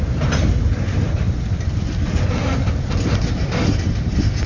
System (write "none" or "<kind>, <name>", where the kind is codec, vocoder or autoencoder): none